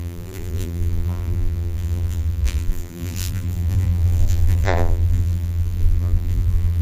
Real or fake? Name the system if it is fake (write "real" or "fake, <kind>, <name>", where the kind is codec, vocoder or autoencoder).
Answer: fake, vocoder, BigVGAN v2